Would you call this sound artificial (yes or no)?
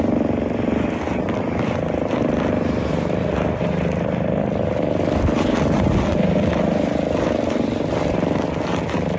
no